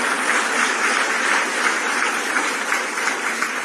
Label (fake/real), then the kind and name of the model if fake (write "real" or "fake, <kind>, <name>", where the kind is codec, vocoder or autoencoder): real